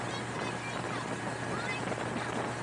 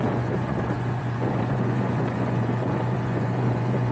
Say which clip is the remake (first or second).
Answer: second